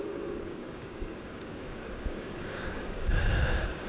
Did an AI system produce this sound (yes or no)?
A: yes